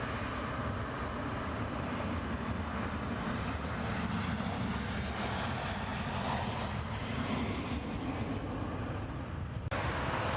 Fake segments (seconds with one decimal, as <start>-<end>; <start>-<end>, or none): none

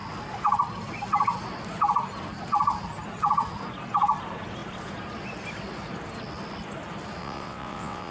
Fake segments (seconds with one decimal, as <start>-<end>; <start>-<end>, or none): 7.2-8.1

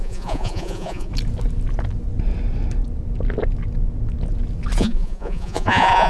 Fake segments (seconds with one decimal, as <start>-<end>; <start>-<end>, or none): 0.0-1.1; 4.8-6.1

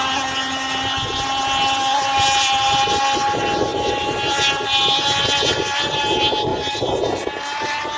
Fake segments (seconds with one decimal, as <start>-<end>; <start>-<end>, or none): none

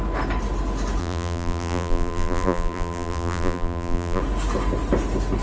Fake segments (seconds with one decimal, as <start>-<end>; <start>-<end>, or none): 1.0-4.2

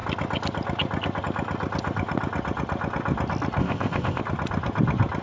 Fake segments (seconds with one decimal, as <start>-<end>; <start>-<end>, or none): 3.6-4.2

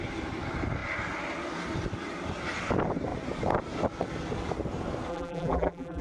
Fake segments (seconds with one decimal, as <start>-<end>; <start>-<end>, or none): 5.1-6.0

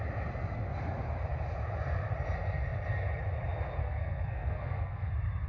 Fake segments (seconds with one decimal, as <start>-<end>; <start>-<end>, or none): 3.8-5.1